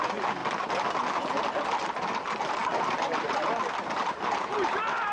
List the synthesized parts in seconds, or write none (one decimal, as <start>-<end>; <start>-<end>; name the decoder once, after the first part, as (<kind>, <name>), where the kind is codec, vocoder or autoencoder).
none